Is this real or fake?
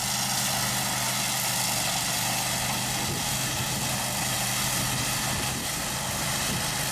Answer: real